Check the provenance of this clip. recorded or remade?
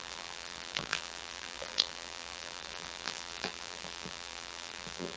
remade